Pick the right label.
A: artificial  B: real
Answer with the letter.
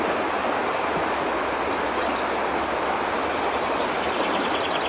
B